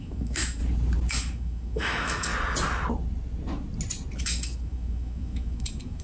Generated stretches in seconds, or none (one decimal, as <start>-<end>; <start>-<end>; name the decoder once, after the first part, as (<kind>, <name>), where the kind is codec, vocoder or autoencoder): 0.0-0.6 (autoencoder, DAC-VAE); 1.1-2.3; 4.2-6.0